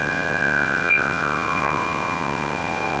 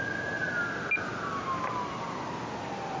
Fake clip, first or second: first